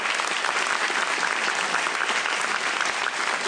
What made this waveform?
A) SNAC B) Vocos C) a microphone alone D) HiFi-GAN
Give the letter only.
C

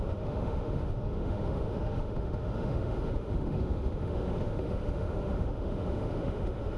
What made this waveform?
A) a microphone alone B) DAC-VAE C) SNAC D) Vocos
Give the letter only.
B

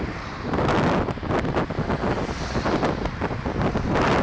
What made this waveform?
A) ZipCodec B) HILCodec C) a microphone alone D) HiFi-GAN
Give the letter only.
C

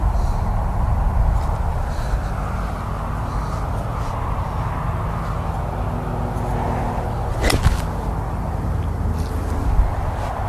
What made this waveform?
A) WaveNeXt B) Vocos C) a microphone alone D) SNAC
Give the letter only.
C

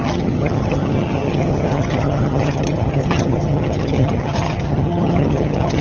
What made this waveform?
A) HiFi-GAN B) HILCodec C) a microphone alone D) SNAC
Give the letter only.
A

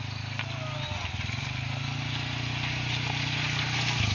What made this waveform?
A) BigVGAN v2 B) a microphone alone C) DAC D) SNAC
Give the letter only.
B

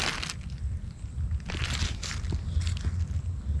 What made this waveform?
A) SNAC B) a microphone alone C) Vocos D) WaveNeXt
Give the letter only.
B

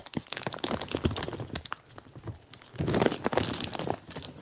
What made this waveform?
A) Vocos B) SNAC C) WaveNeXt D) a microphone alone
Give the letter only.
D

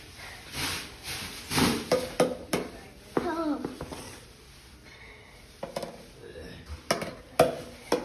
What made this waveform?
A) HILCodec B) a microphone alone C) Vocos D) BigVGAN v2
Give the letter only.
B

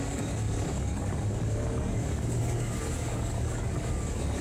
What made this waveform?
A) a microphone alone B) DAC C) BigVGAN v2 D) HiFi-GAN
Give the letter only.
B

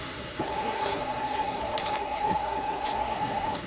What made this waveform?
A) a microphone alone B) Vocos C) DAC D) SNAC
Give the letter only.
D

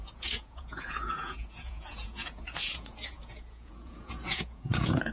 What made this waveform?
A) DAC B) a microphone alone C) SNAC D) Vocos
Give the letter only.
D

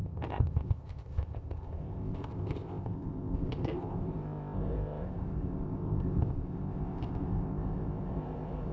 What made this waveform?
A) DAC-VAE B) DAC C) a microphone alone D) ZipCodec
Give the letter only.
D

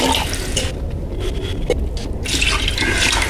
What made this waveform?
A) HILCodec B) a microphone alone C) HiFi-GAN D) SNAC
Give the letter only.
B